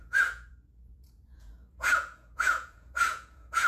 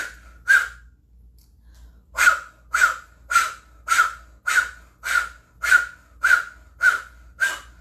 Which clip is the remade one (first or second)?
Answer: first